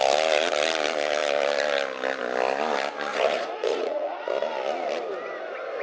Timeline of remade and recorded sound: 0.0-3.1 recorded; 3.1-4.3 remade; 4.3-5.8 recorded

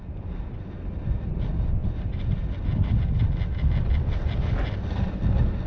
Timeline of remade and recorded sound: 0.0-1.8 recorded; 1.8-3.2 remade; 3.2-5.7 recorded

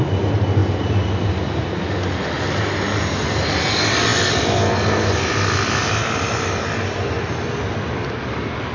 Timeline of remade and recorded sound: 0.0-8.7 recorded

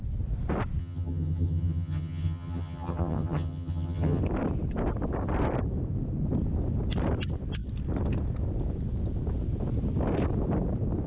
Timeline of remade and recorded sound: 0.0-0.8 recorded; 0.8-4.2 remade; 4.2-11.1 recorded

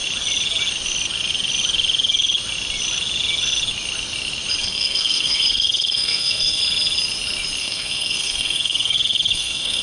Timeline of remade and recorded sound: 0.0-4.6 recorded; 4.6-6.6 remade; 6.6-7.6 recorded; 7.6-9.8 remade